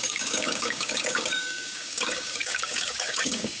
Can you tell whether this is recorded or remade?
remade